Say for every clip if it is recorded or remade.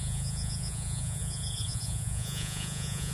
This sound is remade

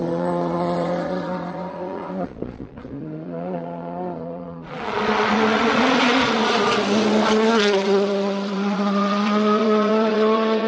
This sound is remade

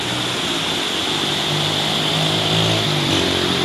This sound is recorded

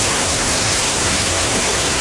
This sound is remade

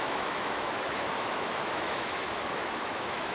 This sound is remade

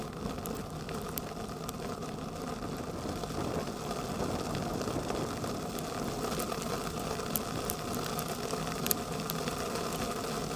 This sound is recorded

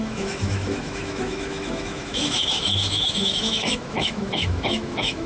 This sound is remade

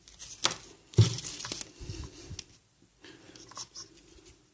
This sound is recorded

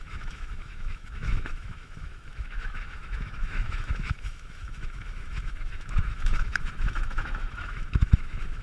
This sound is remade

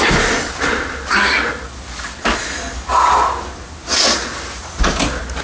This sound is recorded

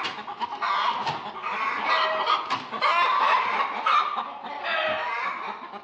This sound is recorded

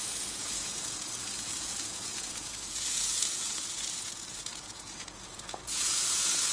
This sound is remade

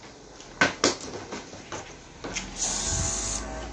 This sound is recorded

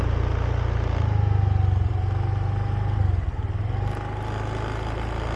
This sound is recorded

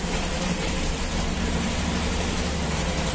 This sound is remade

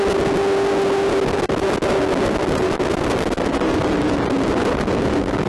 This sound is recorded